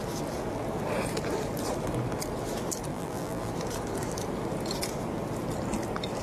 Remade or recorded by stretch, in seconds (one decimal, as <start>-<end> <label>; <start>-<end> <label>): 0.0-2.9 recorded; 2.9-3.5 remade; 3.5-6.2 recorded